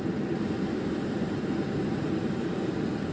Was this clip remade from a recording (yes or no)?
no